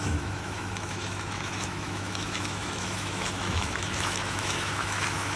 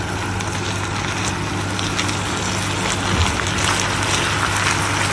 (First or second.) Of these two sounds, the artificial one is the first